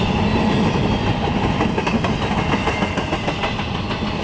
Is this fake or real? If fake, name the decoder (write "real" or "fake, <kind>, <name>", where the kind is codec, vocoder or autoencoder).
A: real